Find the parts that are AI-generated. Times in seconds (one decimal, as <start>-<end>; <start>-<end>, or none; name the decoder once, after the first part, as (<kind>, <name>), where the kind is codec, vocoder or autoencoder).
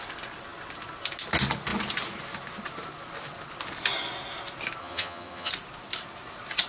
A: 4.8-5.5 (vocoder, HiFi-GAN)